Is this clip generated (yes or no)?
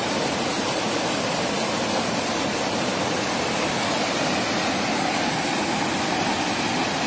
no